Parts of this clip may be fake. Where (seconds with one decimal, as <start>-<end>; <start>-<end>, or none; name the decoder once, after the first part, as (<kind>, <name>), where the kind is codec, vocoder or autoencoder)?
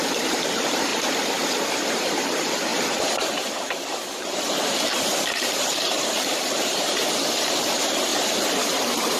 0.0-9.2 (vocoder, BigVGAN v2)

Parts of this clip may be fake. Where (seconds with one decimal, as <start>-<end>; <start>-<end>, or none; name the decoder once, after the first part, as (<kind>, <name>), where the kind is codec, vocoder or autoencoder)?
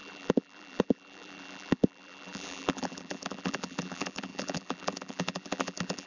0.0-6.1 (vocoder, BigVGAN v2)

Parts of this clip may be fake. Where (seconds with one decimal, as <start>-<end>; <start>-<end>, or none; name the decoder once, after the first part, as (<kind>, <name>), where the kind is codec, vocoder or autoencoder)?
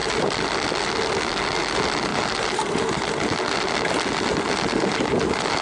none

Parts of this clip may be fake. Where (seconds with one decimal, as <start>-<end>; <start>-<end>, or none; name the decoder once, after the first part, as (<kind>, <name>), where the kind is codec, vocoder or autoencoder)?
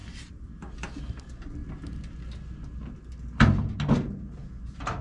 1.0-1.6 (vocoder, BigVGAN v2); 4.6-5.0